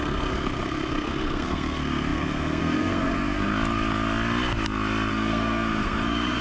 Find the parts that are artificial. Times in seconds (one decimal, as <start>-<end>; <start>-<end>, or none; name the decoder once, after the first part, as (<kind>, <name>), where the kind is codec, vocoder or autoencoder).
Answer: 0.0-3.5 (codec, SNAC); 5.1-6.4